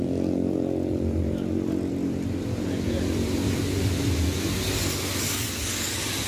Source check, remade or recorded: recorded